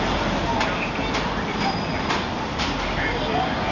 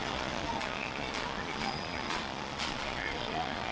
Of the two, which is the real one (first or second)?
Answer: first